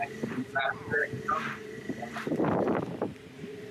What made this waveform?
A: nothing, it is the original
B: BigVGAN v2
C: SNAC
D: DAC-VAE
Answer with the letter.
B